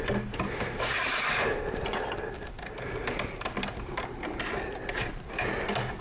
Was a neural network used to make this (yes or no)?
no